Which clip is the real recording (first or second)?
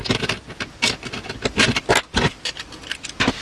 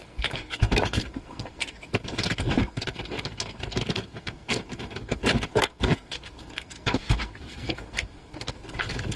first